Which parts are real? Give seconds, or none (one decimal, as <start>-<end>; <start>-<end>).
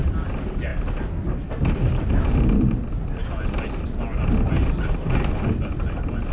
0.0-6.3